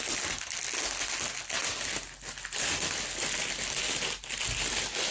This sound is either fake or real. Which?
real